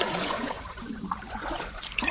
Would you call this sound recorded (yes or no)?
no